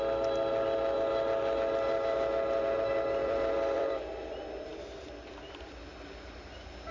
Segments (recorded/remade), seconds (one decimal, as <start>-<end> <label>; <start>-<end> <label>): 0.0-3.2 recorded; 3.2-4.0 remade; 4.0-4.7 recorded; 4.7-5.9 remade; 5.9-6.9 recorded